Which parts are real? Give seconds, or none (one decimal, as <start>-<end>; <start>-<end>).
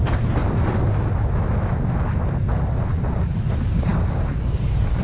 0.4-3.4